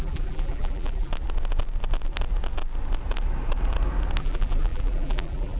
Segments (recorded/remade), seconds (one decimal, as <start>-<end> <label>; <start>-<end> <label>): 0.0-1.1 remade; 1.1-4.2 recorded; 4.2-5.6 remade